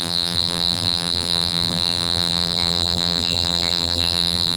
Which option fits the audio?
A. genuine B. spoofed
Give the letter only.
B